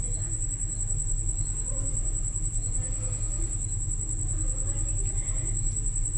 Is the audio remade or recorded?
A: recorded